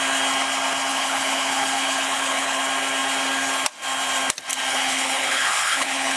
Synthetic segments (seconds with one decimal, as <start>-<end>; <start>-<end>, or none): 0.9-2.6; 4.7-6.2